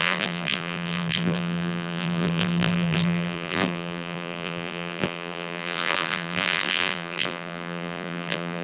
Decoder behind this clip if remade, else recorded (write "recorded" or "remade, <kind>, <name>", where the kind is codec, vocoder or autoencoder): remade, vocoder, BigVGAN v2